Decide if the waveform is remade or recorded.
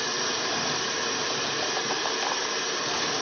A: recorded